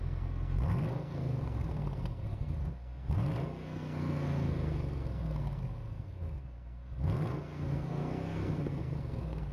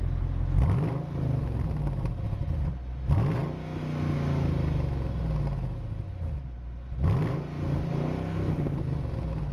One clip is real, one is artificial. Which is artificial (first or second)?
first